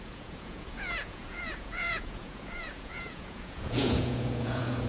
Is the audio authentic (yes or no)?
no